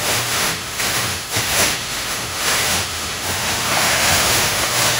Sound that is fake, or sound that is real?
fake